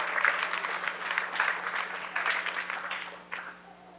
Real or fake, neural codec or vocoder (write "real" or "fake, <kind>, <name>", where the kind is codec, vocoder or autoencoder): real